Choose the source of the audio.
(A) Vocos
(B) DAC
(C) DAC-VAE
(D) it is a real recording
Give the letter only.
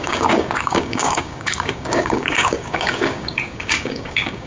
B